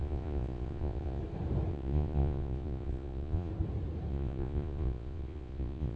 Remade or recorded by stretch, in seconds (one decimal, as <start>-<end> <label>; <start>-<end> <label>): 0.0-1.2 remade; 1.2-1.7 recorded; 1.7-3.5 remade; 3.5-4.1 recorded; 4.1-6.0 remade